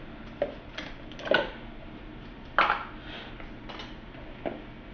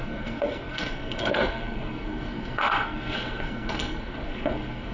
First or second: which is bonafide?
first